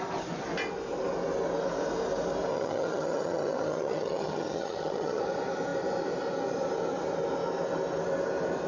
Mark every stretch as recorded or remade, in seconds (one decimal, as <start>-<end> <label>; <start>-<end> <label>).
0.0-2.5 recorded; 2.5-5.2 remade; 5.2-8.7 recorded